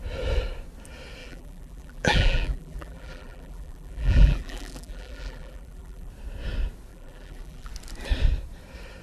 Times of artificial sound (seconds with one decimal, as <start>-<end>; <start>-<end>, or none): 1.2-6.1; 6.9-7.7